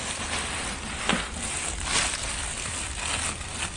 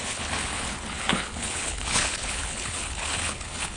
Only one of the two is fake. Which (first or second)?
second